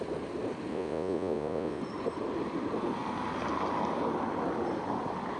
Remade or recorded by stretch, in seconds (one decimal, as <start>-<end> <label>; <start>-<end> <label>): 0.0-0.7 recorded; 0.7-1.8 remade; 1.8-5.4 recorded